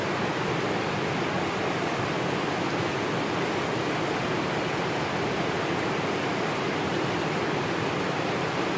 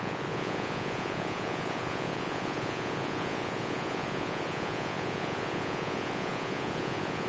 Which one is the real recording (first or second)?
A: first